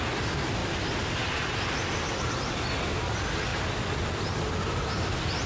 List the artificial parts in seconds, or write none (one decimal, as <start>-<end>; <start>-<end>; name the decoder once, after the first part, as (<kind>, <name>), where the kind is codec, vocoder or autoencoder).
none